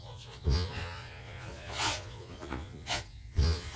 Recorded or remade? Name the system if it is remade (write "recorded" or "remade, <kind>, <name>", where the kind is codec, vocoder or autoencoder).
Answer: remade, vocoder, Vocos